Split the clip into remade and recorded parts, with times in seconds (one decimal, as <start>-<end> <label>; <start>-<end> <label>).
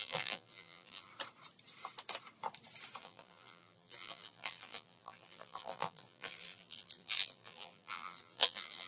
0.0-1.1 remade; 1.1-3.0 recorded; 3.0-8.9 remade